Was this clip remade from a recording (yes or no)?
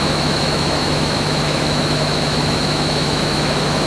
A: yes